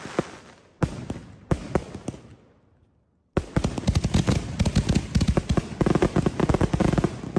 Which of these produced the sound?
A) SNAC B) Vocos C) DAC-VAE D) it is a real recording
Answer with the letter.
D